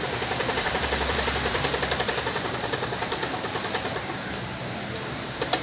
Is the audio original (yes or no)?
no